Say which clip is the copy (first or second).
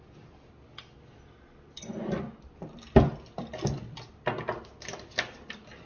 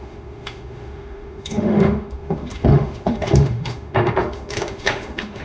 second